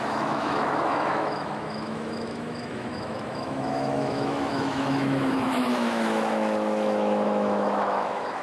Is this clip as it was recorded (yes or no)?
no